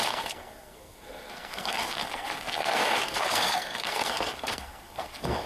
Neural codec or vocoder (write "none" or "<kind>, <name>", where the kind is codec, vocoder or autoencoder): codec, SNAC